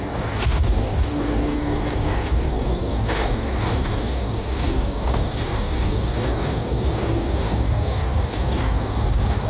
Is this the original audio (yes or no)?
no